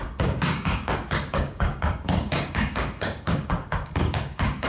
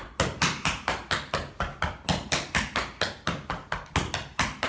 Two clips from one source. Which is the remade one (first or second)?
first